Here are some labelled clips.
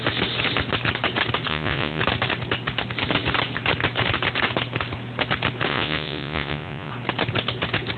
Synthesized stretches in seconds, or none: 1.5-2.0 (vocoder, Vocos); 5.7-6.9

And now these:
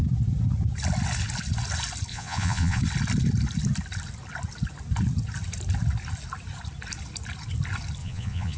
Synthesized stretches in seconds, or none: 2.1-2.8 (vocoder, Vocos); 8.0-8.6